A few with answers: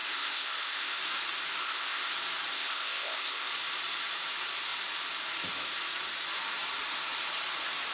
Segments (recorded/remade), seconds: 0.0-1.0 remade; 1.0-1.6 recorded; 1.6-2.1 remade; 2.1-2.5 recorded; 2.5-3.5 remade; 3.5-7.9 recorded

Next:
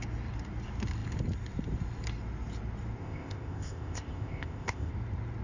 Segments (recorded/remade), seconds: 0.0-3.0 recorded; 3.0-4.9 remade; 4.9-5.4 recorded